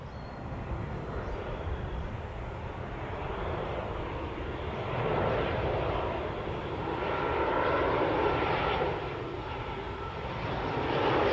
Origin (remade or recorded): recorded